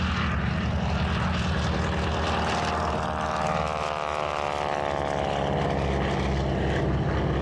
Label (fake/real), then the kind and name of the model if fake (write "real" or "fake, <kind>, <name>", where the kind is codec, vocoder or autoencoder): real